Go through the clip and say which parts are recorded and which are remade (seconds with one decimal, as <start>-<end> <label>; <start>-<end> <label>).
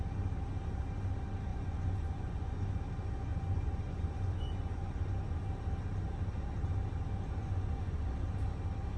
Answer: 0.0-1.5 recorded; 1.5-2.6 remade; 2.6-3.3 recorded; 3.3-5.1 remade; 5.1-7.4 recorded; 7.4-8.1 remade; 8.1-9.0 recorded